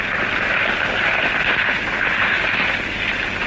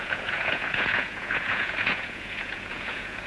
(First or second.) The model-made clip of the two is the second